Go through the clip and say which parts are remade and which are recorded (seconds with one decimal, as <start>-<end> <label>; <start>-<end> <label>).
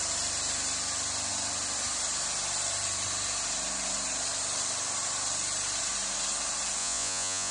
0.0-6.8 recorded; 6.8-7.5 remade